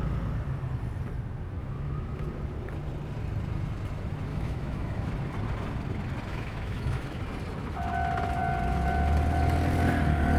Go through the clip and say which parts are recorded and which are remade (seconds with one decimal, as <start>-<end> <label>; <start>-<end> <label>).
0.0-1.6 recorded; 1.6-2.3 remade; 2.3-4.3 recorded; 4.3-5.1 remade; 5.1-6.3 recorded; 6.3-7.2 remade; 7.2-10.4 recorded